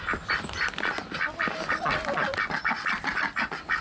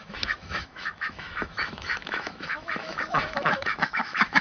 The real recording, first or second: first